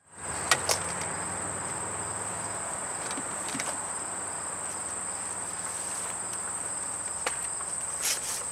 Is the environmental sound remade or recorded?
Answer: recorded